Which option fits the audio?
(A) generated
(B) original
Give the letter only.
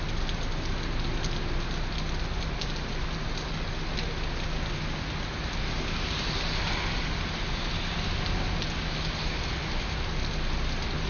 B